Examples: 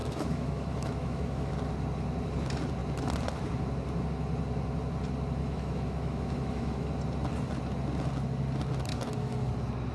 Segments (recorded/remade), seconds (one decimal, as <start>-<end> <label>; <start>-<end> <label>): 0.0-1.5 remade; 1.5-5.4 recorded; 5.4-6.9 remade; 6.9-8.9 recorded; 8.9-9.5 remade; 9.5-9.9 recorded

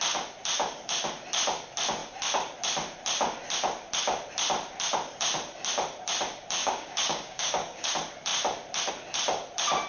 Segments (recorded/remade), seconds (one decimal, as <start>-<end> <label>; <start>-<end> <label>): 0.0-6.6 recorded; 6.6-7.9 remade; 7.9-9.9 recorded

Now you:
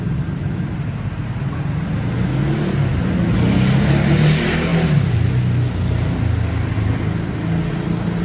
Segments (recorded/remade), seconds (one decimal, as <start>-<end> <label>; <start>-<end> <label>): 0.0-8.2 recorded